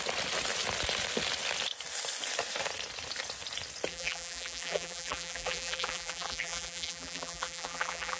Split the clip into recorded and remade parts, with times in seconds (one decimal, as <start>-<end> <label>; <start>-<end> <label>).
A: 0.0-3.9 recorded; 3.9-8.2 remade